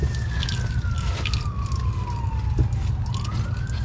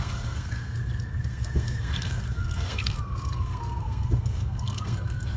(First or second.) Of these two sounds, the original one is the first